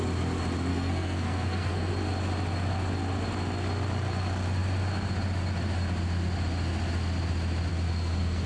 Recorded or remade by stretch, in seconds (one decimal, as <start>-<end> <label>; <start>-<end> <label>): 0.0-0.7 recorded; 0.7-1.9 remade; 1.9-7.7 recorded; 7.7-8.5 remade